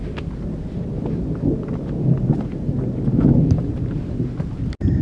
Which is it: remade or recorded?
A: recorded